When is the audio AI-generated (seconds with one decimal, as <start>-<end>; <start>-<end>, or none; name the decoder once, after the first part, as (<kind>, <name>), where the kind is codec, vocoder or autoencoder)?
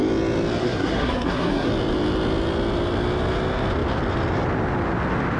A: 0.6-1.7 (codec, SNAC)